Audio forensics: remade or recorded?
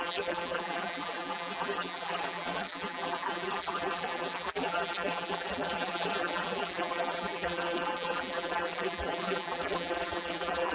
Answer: remade